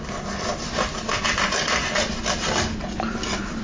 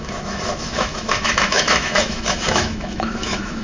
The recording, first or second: first